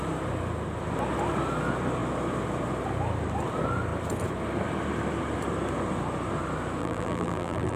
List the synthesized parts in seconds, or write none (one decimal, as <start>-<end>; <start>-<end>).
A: 6.8-7.8